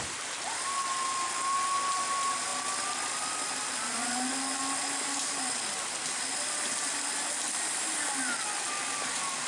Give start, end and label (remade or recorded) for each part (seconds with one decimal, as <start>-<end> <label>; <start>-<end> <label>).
0.0-9.5 recorded